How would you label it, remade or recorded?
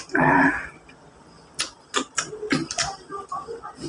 recorded